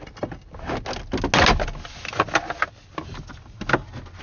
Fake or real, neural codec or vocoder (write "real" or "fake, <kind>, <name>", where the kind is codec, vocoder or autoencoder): real